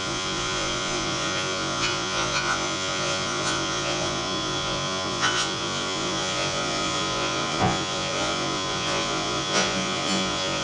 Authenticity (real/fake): fake